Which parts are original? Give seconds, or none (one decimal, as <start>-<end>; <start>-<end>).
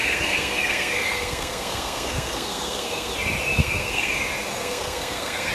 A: 3.1-3.6; 4.1-4.6